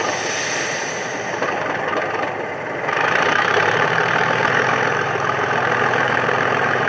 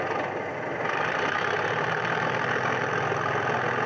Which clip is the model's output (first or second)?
first